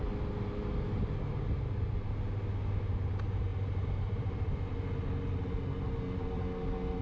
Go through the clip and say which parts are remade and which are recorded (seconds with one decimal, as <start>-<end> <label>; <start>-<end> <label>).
0.0-3.5 recorded; 3.5-4.7 remade; 4.7-7.0 recorded